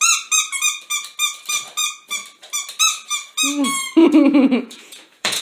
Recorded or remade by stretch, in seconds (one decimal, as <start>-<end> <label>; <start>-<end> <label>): 0.0-4.0 recorded; 4.0-5.4 remade